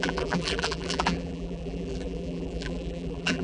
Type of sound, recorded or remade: remade